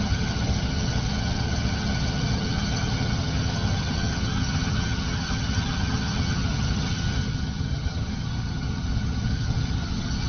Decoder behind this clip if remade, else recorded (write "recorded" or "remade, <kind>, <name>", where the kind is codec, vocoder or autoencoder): remade, vocoder, HiFi-GAN